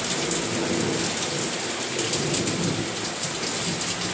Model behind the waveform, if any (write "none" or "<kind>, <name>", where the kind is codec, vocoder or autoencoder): none